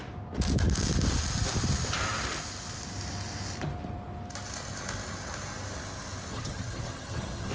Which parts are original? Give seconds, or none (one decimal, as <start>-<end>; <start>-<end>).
0.0-6.3